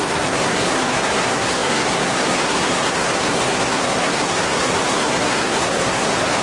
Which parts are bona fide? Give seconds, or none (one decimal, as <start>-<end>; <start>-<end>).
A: none